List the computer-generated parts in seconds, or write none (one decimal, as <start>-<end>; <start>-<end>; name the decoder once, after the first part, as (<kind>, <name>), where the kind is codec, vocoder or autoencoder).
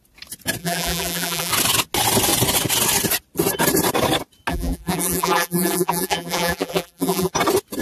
0.6-1.5 (vocoder, BigVGAN v2); 4.5-7.3